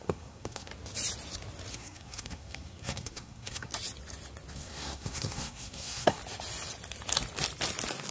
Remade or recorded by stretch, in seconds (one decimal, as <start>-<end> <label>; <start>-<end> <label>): 0.0-0.7 remade; 0.7-1.7 recorded; 1.7-3.7 remade; 3.7-4.5 recorded; 4.5-6.2 remade; 6.2-8.1 recorded